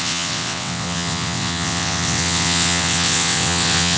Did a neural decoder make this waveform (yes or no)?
yes